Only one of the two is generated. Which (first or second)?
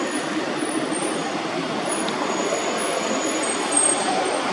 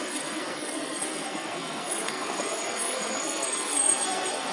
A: second